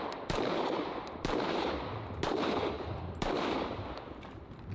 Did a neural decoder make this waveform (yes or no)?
no